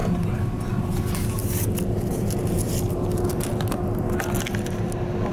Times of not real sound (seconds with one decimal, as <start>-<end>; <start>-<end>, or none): none